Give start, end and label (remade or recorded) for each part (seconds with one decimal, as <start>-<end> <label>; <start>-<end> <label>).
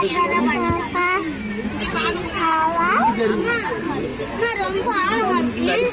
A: 0.0-5.9 recorded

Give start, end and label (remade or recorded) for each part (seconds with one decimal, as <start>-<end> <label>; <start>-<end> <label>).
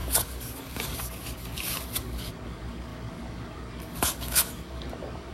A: 0.0-5.3 remade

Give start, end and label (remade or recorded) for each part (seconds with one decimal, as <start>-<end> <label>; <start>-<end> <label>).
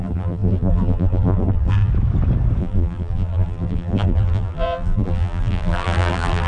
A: 0.0-1.9 remade; 1.9-2.6 recorded; 2.6-6.5 remade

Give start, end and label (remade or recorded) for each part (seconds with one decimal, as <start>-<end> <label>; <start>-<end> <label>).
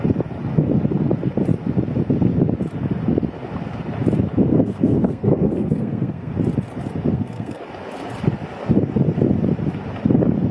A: 0.0-4.5 recorded; 4.5-6.3 remade; 6.3-7.1 recorded; 7.1-7.6 remade; 7.6-10.5 recorded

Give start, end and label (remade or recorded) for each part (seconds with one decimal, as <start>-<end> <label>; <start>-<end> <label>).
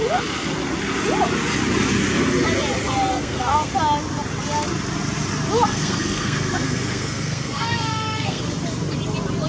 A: 0.0-3.1 recorded; 3.1-3.7 remade; 3.7-5.7 recorded; 5.7-8.4 remade; 8.4-9.5 recorded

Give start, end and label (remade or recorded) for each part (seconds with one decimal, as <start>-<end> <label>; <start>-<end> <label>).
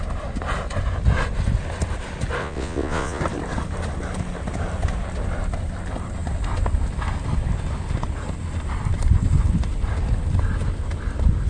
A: 0.0-2.4 recorded; 2.4-3.2 remade; 3.2-11.5 recorded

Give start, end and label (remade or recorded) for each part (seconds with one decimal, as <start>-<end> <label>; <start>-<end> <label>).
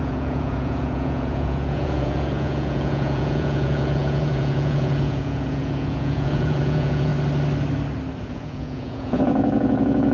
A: 0.0-7.1 remade; 7.1-8.2 recorded; 8.2-10.1 remade